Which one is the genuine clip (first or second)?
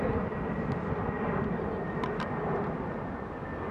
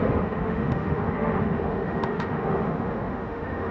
first